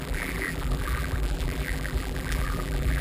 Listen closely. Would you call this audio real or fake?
fake